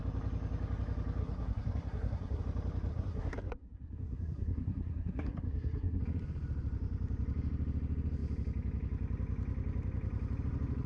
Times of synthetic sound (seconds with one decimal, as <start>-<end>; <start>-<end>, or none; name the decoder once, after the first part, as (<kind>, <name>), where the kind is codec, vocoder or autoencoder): 1.2-2.4 (codec, SNAC); 2.9-6.0